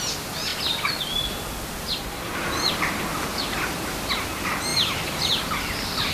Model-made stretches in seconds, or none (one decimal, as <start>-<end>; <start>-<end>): none